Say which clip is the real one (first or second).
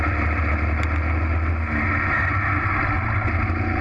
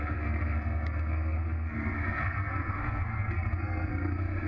first